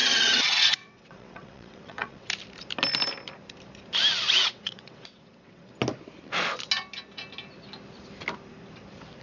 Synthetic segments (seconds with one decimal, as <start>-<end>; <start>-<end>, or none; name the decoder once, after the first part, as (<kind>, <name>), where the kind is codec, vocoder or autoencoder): 0.0-2.3 (vocoder, WaveNeXt); 4.4-5.7